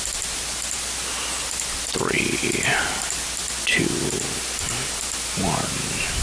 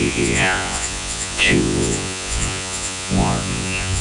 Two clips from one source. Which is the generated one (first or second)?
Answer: second